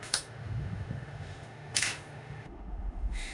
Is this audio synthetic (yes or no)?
yes